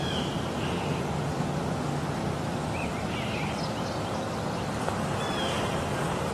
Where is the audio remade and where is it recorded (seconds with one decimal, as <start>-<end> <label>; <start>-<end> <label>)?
0.0-2.2 remade; 2.2-6.3 recorded